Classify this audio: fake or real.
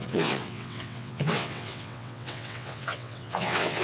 fake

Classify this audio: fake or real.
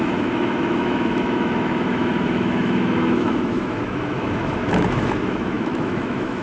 fake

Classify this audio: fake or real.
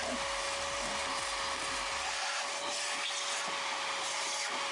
real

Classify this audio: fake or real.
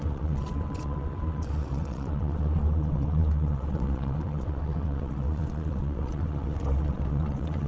fake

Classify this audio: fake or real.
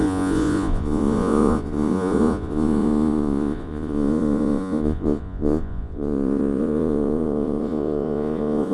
fake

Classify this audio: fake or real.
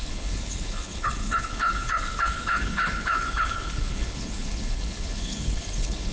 fake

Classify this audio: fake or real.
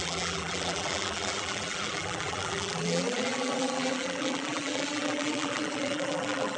fake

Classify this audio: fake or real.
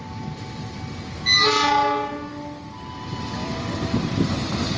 real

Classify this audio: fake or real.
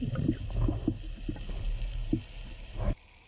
real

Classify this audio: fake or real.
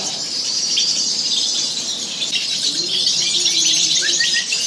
fake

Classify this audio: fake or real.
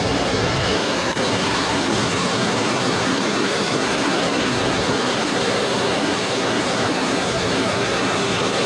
fake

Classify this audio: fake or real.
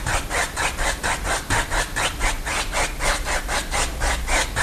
real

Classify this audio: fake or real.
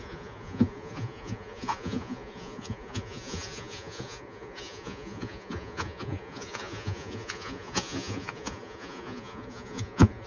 fake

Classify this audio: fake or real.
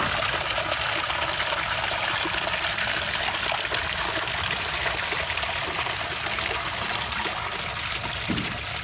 real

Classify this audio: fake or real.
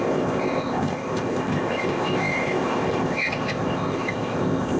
fake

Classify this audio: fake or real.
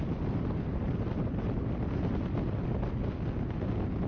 real